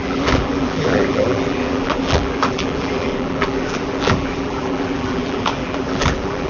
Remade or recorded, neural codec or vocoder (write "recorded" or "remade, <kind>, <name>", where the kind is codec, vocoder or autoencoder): remade, vocoder, BigVGAN v2